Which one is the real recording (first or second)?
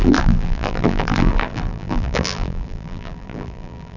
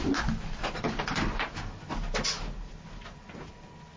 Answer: second